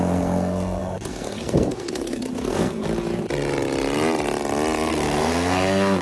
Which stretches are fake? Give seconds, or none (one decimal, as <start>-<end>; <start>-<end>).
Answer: 0.0-2.8; 4.9-6.0